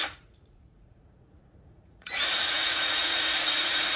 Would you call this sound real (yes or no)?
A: no